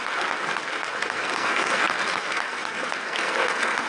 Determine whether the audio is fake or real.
fake